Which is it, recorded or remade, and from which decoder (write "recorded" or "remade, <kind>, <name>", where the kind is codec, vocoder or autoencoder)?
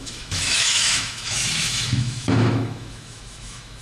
remade, autoencoder, DAC-VAE